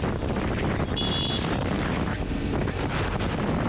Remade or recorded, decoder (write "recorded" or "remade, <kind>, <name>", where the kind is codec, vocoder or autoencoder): recorded